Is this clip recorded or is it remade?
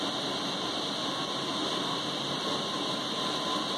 recorded